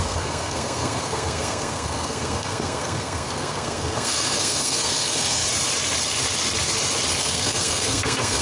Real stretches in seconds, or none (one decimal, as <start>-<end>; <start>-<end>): 5.4-7.2